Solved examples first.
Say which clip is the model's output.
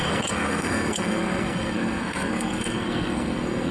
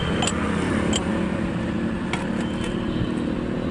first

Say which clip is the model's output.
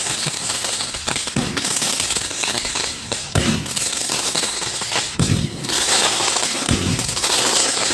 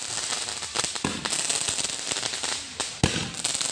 first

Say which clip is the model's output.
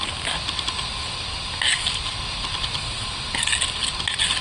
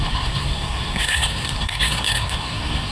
second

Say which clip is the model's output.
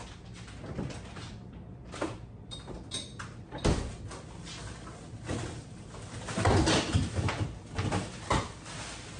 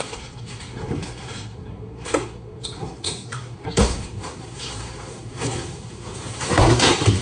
second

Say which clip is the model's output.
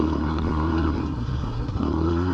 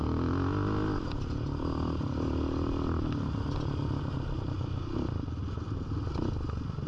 first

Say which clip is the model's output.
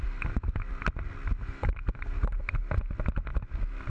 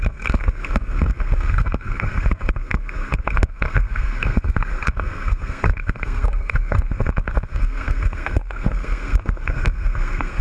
second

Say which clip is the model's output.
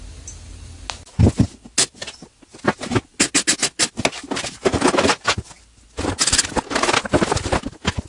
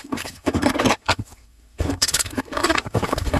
second